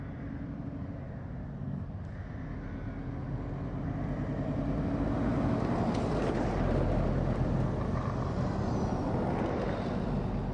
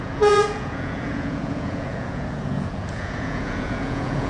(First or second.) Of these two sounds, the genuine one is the first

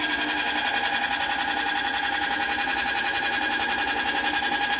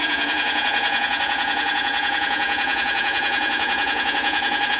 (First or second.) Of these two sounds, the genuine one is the first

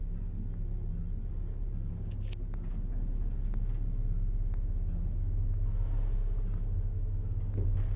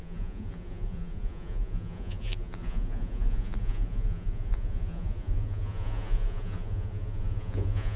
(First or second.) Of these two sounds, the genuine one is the first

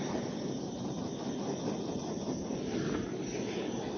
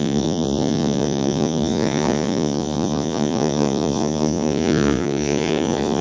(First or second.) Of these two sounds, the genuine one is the first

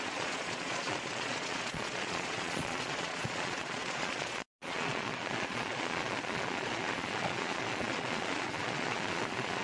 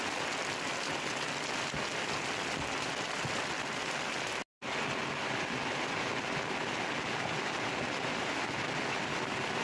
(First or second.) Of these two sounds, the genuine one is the second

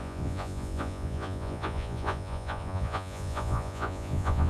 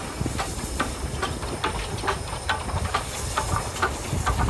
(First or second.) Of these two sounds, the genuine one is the second